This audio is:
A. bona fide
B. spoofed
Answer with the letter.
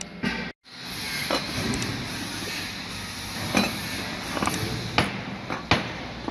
A